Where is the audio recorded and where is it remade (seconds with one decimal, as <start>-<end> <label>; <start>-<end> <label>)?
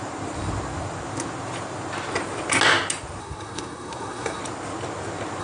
0.0-3.2 recorded; 3.2-4.4 remade; 4.4-5.4 recorded